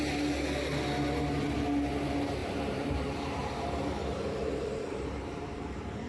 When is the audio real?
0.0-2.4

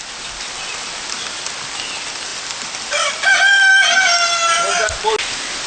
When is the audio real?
0.0-2.3; 2.9-5.7

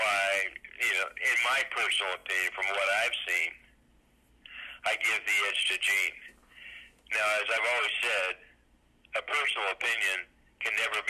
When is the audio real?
0.0-11.1

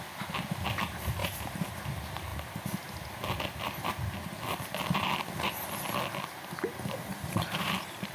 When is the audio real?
0.0-1.2; 1.7-7.1

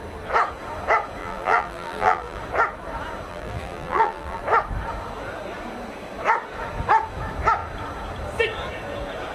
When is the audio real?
0.0-1.2; 2.4-3.3; 4.4-9.3

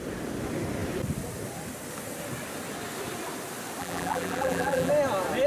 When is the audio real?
0.0-3.8; 4.9-5.5

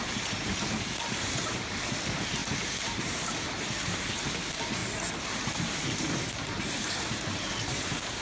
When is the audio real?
4.8-5.5